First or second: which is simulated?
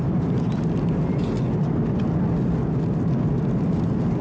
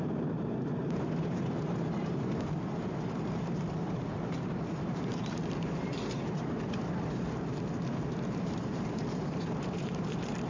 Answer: second